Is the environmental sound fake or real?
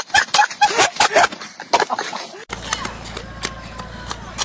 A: real